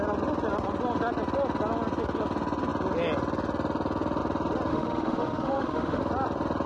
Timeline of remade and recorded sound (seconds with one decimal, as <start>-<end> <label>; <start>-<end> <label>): 0.0-4.7 recorded; 4.7-6.0 remade; 6.0-6.7 recorded